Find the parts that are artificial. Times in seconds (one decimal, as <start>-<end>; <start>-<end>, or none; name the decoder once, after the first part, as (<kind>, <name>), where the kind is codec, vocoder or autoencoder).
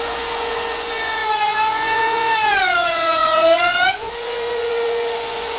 0.0-5.6 (vocoder, Vocos)